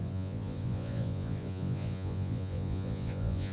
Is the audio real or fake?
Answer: fake